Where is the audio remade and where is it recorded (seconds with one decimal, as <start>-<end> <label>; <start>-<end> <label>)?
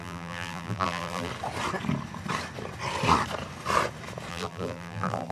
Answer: 0.0-1.3 remade; 1.3-4.3 recorded; 4.3-5.3 remade